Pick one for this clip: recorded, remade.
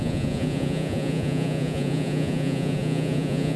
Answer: remade